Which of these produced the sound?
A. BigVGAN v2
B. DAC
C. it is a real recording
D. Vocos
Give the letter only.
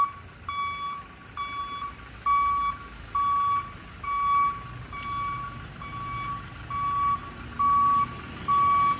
C